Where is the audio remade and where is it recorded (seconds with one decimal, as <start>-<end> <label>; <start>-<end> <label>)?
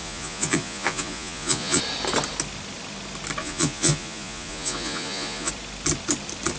0.0-1.8 remade; 1.8-3.4 recorded; 3.4-5.5 remade; 5.5-6.6 recorded